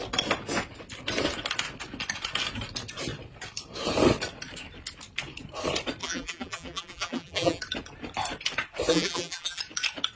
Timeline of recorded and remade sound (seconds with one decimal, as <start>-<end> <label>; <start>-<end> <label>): 0.0-6.0 recorded; 6.0-7.6 remade; 7.6-8.9 recorded; 8.9-9.6 remade; 9.6-10.2 recorded